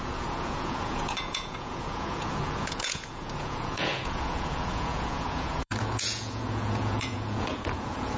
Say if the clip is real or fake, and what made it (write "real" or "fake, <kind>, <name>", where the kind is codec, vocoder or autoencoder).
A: fake, vocoder, Vocos